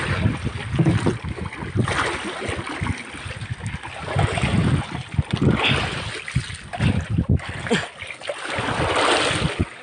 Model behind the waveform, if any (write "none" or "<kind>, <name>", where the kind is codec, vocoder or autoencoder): none